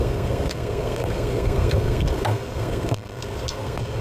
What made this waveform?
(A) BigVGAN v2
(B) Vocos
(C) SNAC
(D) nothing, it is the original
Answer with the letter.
C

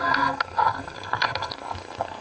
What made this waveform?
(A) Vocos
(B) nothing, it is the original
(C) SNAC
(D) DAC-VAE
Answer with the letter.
C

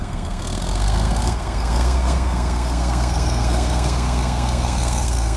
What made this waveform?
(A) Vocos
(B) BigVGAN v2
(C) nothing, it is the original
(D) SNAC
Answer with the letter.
D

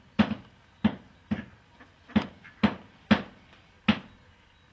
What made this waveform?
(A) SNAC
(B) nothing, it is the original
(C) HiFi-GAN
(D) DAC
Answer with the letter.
B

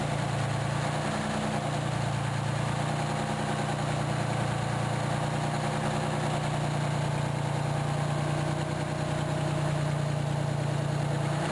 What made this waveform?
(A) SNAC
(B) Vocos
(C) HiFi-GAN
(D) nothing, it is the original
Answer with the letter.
D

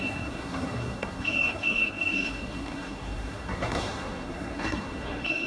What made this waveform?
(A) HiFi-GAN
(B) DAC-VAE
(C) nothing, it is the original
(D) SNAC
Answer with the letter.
D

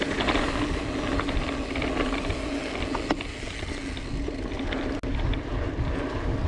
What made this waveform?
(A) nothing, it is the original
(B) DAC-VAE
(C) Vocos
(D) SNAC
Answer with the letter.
A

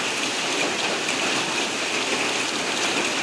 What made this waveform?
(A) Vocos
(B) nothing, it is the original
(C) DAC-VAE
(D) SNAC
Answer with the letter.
B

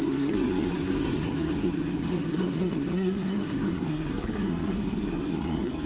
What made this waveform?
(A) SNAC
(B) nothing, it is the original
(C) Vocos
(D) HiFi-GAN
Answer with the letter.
A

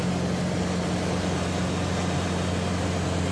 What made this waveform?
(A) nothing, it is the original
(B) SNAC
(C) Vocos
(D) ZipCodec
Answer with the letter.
A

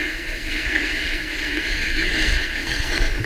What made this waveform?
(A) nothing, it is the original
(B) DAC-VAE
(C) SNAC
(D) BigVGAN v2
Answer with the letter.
C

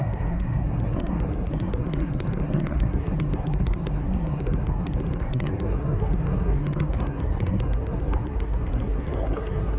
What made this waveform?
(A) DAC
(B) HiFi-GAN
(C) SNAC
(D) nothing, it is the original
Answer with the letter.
C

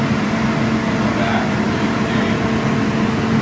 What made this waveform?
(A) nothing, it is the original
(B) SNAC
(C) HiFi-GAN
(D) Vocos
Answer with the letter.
A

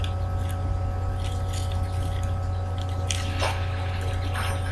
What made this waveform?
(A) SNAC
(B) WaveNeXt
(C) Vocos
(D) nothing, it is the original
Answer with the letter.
D